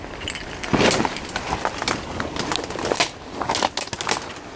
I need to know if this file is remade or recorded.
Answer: recorded